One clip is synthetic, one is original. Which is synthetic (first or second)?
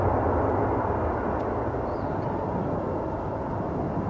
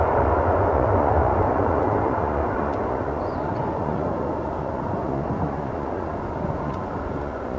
second